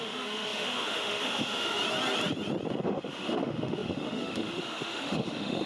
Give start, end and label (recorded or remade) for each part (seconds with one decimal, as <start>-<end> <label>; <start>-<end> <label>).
0.0-1.8 remade; 1.8-2.7 recorded; 2.7-5.7 remade